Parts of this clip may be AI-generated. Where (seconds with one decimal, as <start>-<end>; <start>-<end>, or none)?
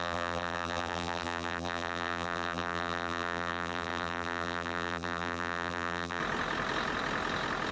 0.0-6.2